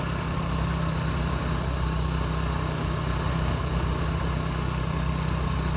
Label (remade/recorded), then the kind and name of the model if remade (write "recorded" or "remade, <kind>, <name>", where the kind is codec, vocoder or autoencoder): recorded